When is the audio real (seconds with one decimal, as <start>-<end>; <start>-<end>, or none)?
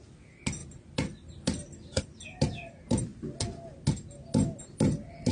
0.0-0.6; 2.0-5.3